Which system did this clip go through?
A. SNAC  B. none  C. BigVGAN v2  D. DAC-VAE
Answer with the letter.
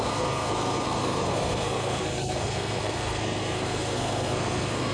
A